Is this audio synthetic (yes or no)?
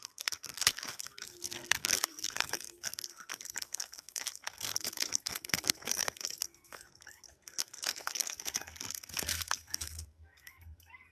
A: yes